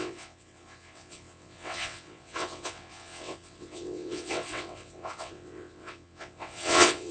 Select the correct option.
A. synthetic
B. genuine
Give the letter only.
A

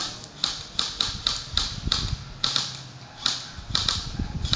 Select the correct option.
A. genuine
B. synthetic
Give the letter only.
A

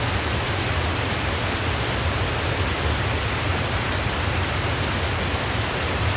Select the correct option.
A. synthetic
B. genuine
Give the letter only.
B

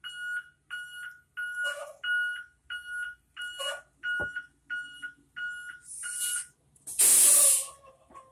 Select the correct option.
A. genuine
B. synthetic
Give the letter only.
A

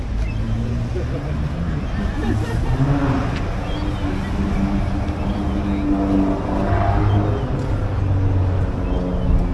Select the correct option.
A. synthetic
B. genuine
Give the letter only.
B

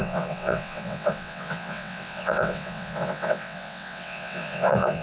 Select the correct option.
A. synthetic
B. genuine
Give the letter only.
A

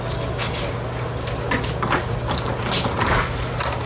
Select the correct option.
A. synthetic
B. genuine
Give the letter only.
B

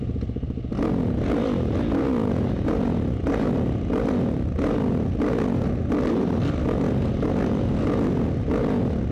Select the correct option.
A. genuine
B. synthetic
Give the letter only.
A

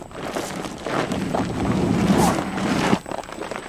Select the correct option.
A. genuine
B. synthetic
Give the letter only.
B